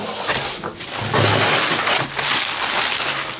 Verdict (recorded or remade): recorded